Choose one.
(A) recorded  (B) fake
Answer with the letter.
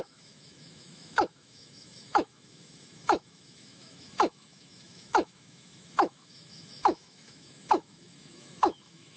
B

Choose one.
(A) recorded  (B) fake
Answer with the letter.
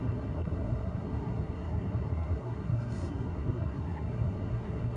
B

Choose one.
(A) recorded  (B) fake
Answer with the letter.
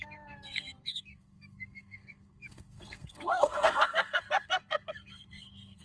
B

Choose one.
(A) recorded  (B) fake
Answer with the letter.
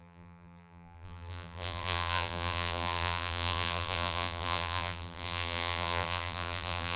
B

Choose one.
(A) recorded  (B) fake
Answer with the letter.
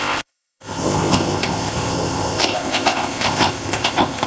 B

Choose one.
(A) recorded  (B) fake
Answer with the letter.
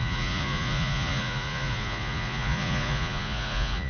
B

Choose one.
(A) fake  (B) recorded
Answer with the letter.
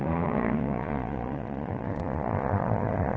A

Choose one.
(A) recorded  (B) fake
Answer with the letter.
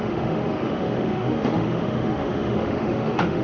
B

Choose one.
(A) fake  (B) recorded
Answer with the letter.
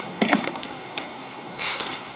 A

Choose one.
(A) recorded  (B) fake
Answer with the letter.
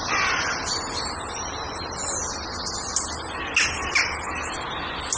A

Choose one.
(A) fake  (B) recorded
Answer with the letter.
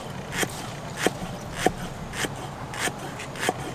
B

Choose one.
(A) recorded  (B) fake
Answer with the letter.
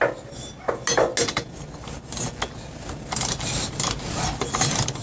A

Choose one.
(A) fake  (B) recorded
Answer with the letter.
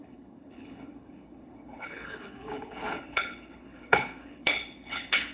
A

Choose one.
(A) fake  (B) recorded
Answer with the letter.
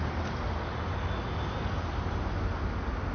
B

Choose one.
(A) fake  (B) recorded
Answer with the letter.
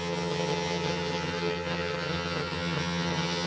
A